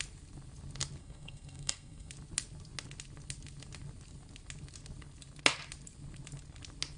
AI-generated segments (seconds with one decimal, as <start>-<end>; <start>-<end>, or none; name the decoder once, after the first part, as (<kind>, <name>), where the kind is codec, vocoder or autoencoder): 1.0-2.1 (codec, SNAC)